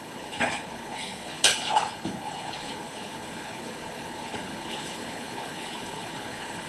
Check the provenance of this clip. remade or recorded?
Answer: remade